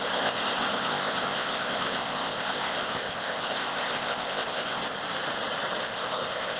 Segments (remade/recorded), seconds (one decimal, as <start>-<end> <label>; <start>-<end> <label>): 0.0-4.8 remade; 4.8-5.8 recorded; 5.8-6.6 remade